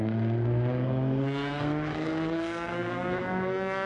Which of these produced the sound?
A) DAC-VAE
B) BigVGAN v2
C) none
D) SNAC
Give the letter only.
D